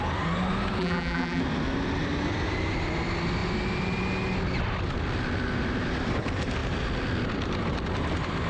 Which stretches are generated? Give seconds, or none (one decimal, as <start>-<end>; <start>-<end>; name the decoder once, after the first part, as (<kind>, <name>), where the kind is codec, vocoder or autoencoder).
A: 0.8-1.4 (vocoder, BigVGAN v2)